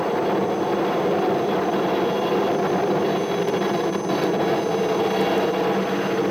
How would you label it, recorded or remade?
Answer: recorded